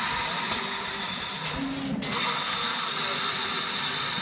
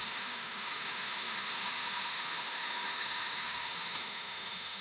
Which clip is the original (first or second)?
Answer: first